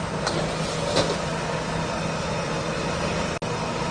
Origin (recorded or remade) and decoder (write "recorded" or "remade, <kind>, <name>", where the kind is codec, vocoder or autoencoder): recorded